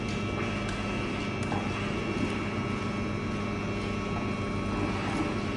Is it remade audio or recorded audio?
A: recorded